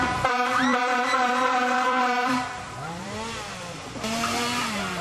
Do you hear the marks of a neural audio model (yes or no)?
yes